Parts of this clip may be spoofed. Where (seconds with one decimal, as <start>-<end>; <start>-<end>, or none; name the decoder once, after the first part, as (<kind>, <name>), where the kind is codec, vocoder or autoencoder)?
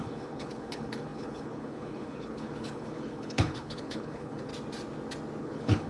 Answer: 0.0-4.5 (codec, HILCodec); 5.4-5.9